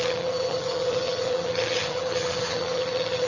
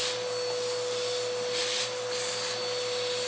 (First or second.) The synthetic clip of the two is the first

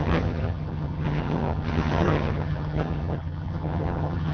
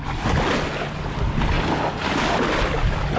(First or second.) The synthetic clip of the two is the first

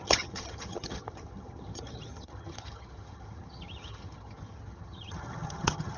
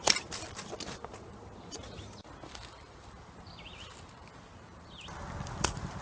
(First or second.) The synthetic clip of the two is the first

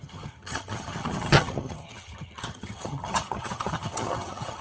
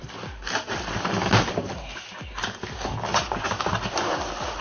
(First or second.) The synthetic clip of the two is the first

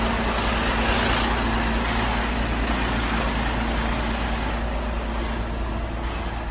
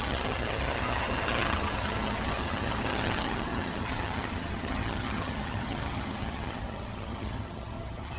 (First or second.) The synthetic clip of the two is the second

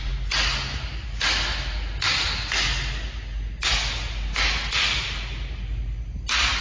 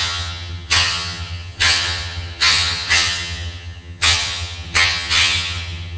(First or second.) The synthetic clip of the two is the second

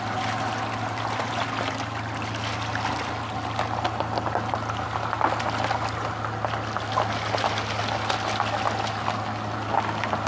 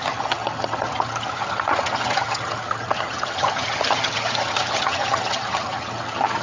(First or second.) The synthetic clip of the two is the second